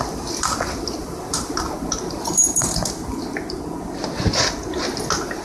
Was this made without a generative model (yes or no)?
yes